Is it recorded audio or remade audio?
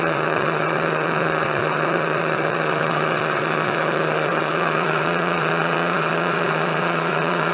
remade